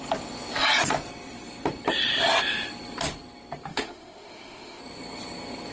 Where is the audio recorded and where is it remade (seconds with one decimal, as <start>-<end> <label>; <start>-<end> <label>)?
0.0-3.7 recorded; 3.7-4.8 remade; 4.8-5.7 recorded